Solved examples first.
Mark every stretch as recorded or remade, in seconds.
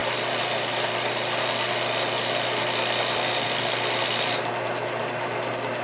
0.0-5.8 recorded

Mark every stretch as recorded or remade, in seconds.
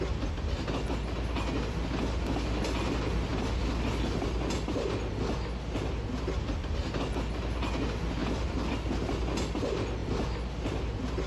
0.0-8.2 recorded; 8.2-8.7 remade; 8.7-10.0 recorded; 10.0-11.3 remade